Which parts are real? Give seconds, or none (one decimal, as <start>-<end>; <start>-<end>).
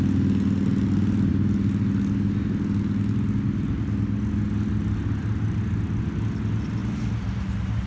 0.0-7.9